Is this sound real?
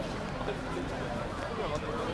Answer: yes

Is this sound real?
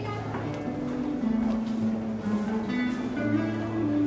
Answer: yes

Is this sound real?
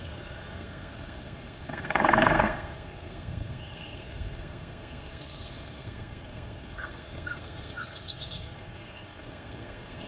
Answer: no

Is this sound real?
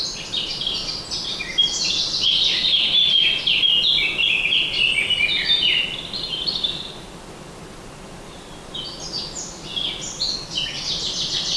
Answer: yes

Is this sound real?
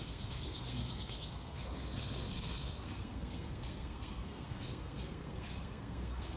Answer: no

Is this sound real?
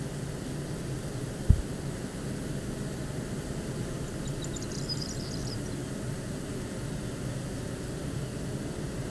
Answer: yes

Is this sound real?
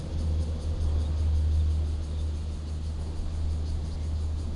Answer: yes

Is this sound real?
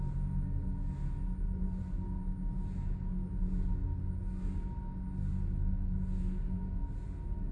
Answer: yes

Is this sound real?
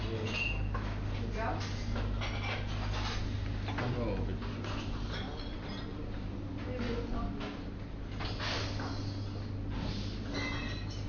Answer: yes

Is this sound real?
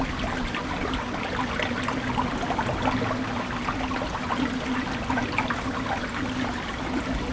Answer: yes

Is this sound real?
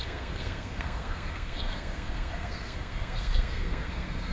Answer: no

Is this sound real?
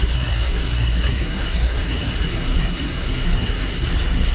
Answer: no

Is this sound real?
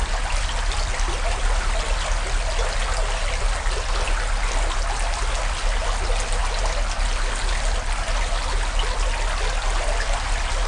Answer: yes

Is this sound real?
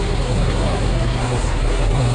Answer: no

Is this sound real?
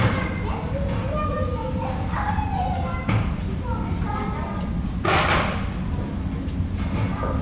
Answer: yes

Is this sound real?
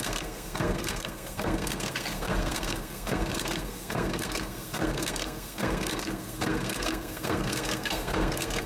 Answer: no